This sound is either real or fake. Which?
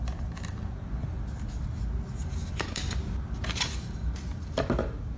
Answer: real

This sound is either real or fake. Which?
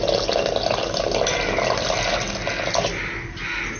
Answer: real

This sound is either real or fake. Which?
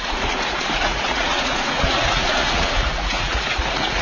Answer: fake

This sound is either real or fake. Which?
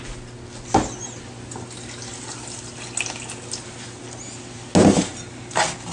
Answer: real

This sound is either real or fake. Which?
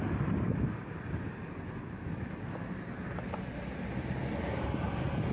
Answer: real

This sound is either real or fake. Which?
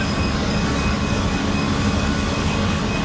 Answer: fake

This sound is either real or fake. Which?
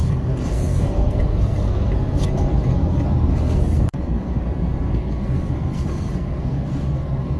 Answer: fake